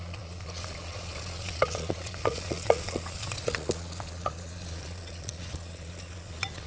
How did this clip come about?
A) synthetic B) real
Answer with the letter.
A